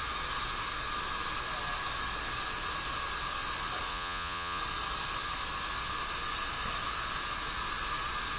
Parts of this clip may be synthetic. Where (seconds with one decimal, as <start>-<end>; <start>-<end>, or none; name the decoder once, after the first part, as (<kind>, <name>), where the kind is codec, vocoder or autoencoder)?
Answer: 3.9-4.6 (vocoder, Vocos)